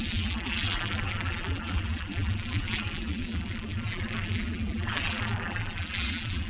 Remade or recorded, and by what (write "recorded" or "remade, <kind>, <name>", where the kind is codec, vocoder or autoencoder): remade, vocoder, BigVGAN v2